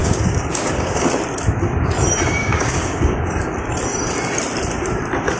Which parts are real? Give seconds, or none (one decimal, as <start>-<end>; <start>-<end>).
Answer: 1.1-2.4; 3.4-5.4